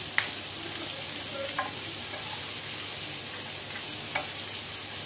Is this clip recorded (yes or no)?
yes